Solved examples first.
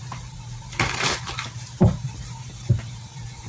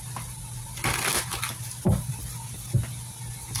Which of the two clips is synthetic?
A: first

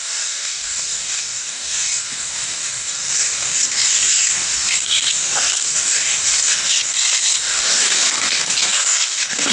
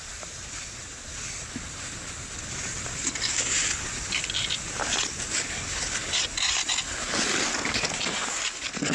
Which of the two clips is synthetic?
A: first